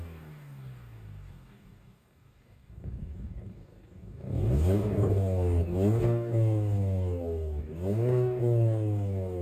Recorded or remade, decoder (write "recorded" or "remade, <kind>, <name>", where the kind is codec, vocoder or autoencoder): remade, codec, DAC